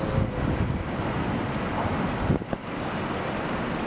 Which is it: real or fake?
real